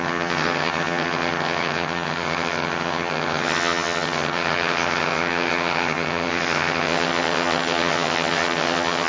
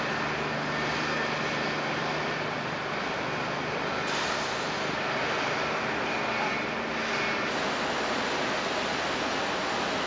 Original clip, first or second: second